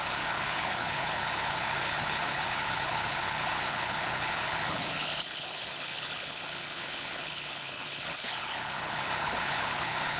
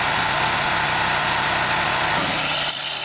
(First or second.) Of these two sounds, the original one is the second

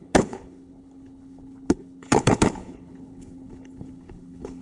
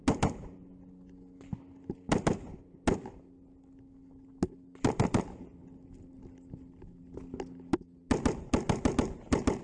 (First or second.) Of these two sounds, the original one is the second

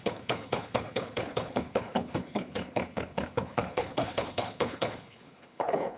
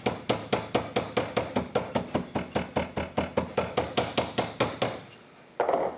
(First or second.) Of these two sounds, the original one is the second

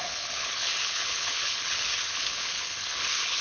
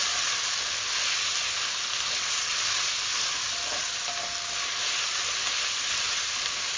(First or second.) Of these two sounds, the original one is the second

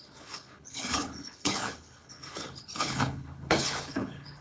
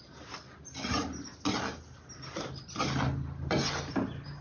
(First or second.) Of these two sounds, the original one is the second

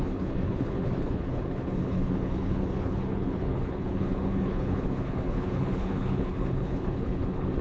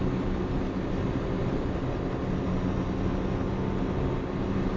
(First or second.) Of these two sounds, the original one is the second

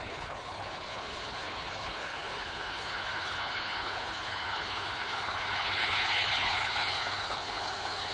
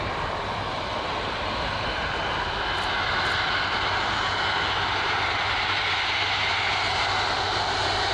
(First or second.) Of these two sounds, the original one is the second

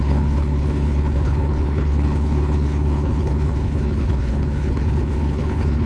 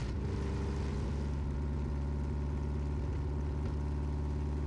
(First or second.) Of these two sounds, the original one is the second